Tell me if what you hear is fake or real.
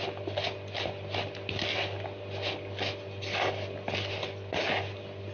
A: real